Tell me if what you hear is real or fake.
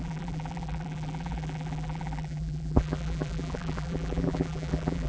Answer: fake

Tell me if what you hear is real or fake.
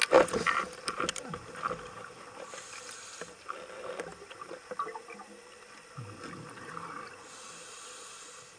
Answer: real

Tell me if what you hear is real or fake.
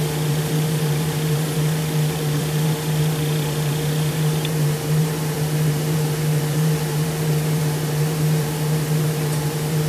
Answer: fake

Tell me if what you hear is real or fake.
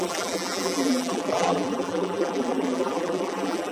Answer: fake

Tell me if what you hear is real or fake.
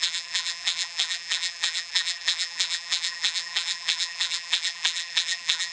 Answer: fake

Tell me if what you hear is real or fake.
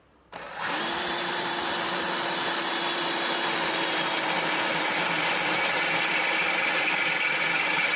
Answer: fake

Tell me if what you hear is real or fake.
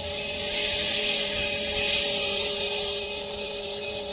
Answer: fake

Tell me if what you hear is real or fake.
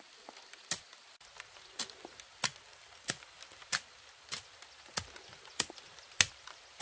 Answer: real